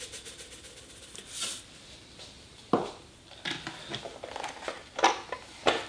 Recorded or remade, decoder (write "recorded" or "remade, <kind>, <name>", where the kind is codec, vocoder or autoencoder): recorded